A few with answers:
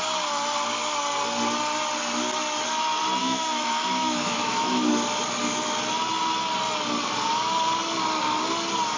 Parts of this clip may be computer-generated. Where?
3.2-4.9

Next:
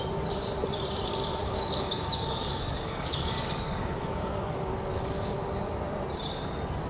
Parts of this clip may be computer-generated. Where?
1.4-5.5

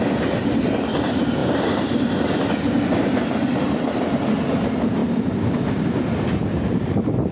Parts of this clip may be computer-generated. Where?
0.0-1.4; 3.0-7.3

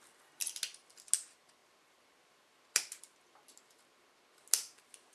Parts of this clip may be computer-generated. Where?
none

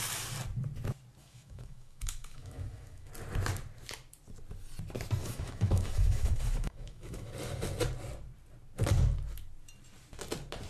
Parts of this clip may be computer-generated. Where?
1.2-3.1; 5.2-7.3

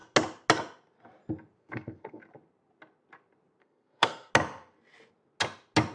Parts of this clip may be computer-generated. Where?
1.6-2.2; 3.6-4.3

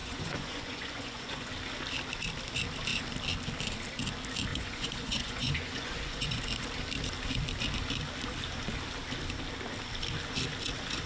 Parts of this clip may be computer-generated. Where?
0.0-1.5; 4.5-6.4

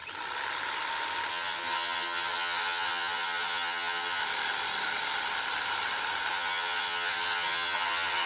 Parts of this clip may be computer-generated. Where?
1.3-4.2; 6.3-8.3